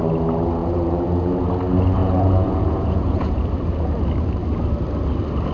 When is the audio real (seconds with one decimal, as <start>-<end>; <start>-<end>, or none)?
0.0-0.6; 1.5-2.0; 3.4-5.5